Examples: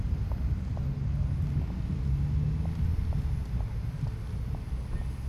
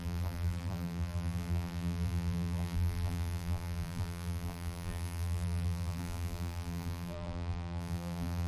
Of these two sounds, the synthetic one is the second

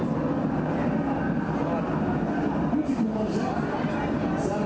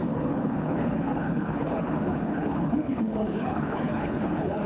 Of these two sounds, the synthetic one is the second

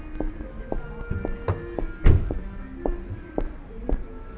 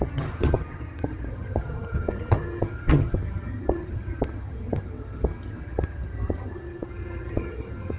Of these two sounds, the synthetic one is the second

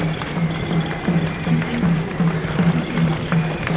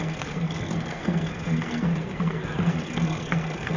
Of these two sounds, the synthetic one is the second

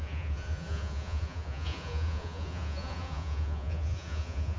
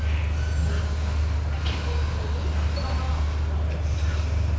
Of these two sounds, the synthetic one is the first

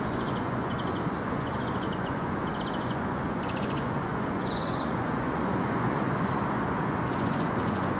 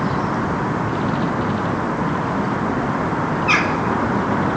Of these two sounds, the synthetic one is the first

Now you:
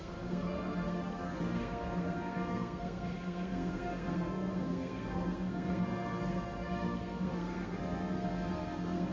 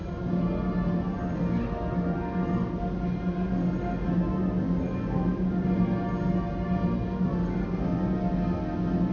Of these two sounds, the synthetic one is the first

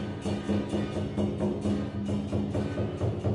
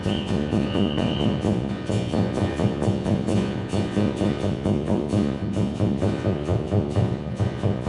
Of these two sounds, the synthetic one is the second